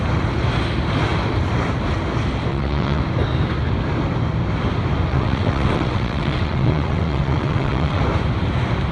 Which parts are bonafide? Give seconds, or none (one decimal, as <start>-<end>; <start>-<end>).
0.0-2.5; 3.0-5.1; 8.0-8.9